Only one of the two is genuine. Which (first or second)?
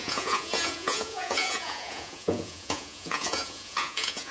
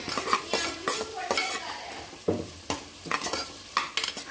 second